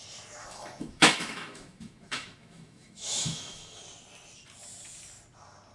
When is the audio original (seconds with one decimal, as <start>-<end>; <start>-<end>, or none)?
0.0-0.4; 3.8-5.7